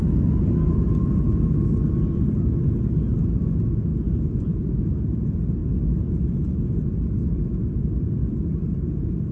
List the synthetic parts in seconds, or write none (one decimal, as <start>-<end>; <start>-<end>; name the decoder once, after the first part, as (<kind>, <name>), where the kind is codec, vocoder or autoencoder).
3.9-4.8 (vocoder, BigVGAN v2)